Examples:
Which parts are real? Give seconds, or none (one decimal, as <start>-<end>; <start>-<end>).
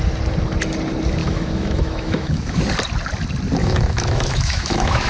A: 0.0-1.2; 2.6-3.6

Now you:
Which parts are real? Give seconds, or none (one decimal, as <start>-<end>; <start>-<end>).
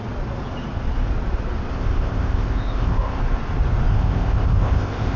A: 0.0-1.7; 3.2-3.9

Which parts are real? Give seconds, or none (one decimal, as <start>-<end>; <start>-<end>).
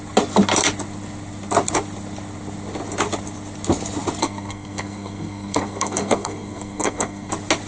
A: 0.0-4.2; 7.3-7.7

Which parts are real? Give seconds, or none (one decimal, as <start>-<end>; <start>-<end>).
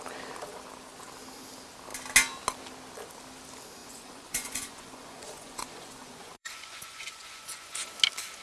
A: 0.0-3.8; 7.9-8.4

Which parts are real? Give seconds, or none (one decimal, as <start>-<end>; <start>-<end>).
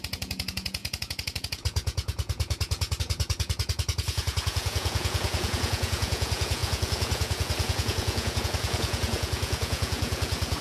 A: none